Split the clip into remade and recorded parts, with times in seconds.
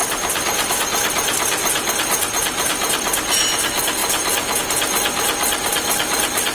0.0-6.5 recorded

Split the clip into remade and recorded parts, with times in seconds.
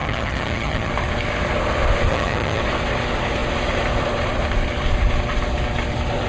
0.0-0.9 remade; 0.9-2.1 recorded; 2.1-2.6 remade; 2.6-6.3 recorded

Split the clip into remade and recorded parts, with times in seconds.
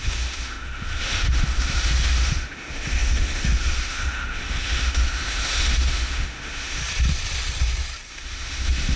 0.0-6.8 remade; 6.8-8.1 recorded; 8.1-9.0 remade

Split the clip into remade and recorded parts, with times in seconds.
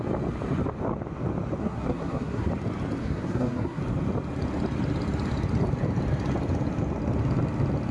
0.0-1.6 recorded; 1.6-2.5 remade; 2.5-3.0 recorded; 3.0-3.8 remade; 3.8-7.9 recorded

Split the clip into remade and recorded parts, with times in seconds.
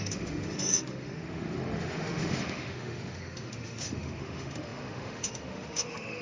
0.0-6.2 remade